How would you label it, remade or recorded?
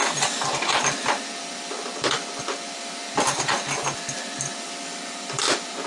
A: remade